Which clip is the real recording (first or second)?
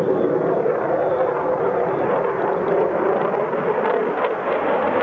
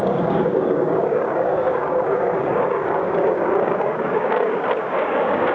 first